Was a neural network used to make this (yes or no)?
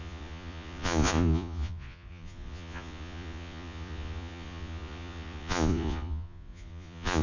yes